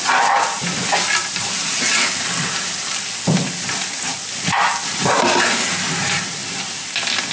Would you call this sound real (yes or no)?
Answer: yes